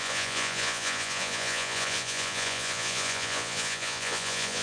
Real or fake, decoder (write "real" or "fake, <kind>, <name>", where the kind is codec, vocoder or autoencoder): fake, vocoder, Vocos